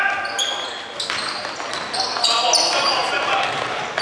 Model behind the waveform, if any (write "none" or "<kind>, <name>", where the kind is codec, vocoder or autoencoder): none